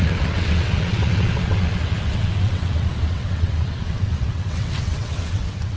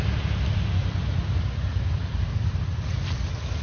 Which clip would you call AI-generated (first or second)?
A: first